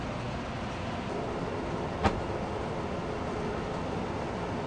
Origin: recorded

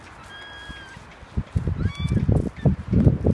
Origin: recorded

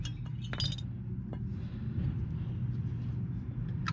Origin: recorded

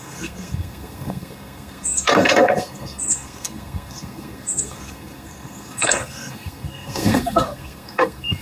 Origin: remade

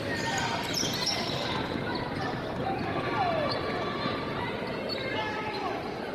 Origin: recorded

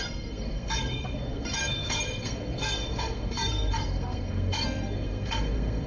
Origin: remade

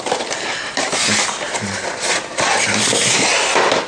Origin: recorded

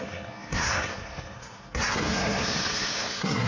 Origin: remade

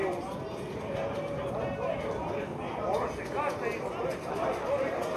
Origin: recorded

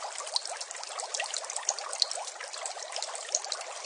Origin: recorded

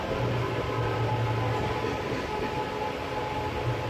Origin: recorded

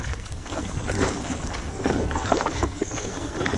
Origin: remade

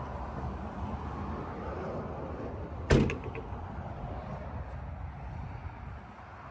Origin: recorded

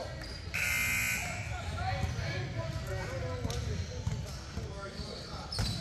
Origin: recorded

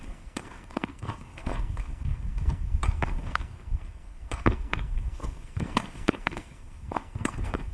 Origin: remade